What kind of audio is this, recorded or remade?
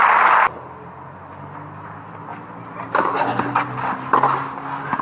recorded